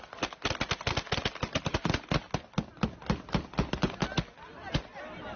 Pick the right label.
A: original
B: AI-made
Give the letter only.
A